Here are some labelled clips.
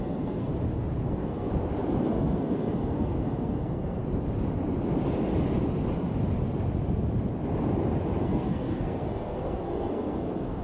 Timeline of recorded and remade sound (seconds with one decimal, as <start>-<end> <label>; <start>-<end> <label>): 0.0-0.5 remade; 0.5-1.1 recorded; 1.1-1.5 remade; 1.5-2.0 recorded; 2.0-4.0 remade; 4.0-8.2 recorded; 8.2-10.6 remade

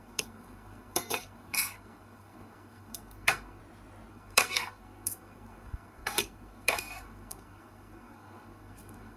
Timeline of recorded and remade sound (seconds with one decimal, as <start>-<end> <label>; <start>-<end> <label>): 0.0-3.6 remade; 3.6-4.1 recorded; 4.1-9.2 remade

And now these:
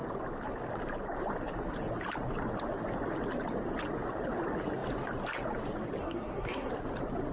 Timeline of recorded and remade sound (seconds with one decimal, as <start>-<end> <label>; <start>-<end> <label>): 0.0-6.0 recorded; 6.0-6.7 remade; 6.7-7.3 recorded

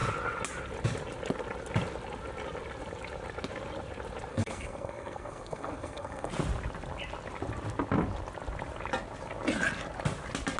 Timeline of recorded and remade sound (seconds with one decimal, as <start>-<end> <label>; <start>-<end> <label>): 0.0-4.3 recorded; 4.3-6.3 remade; 6.3-10.6 recorded

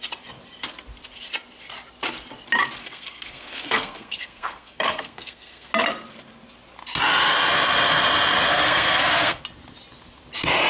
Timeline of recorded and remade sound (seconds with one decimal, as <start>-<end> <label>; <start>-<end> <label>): 0.0-2.8 recorded; 2.8-5.7 remade; 5.7-8.5 recorded; 8.5-9.4 remade; 9.4-10.7 recorded

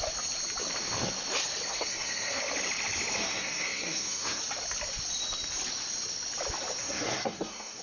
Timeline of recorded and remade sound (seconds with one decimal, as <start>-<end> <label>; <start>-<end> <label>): 0.0-1.7 recorded; 1.7-2.4 remade; 2.4-3.2 recorded; 3.2-4.4 remade; 4.4-6.8 recorded; 6.8-7.8 remade